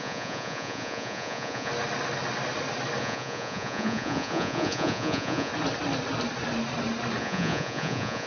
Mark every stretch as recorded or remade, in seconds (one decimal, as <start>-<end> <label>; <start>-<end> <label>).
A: 0.0-1.7 remade; 1.7-3.0 recorded; 3.0-5.5 remade; 5.5-7.2 recorded; 7.2-8.3 remade